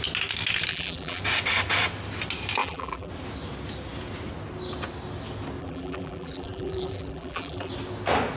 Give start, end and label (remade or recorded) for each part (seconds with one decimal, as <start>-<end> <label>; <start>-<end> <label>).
0.0-0.7 recorded; 0.7-1.2 remade; 1.2-2.6 recorded; 2.6-3.1 remade; 3.1-5.6 recorded; 5.6-7.7 remade; 7.7-8.4 recorded